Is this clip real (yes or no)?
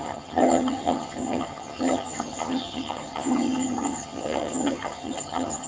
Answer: no